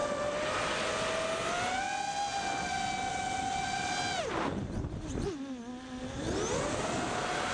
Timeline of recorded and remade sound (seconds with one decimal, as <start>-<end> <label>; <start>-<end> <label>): 0.0-7.5 recorded